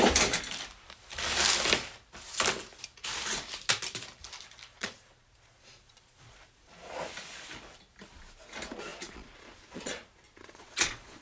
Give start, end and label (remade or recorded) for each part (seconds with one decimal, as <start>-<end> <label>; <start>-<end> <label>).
0.0-4.7 recorded; 4.7-6.7 remade; 6.7-8.9 recorded; 8.9-11.2 remade